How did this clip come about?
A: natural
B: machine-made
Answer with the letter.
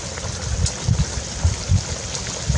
A